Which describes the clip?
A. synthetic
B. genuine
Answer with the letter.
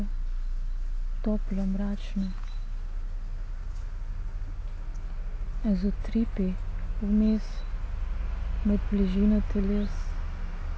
B